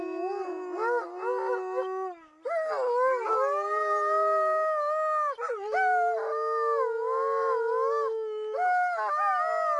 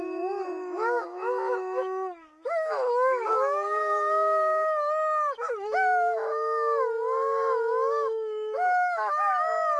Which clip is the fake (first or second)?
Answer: second